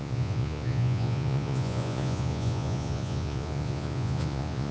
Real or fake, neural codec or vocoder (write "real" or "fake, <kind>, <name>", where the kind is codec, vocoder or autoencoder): fake, vocoder, Vocos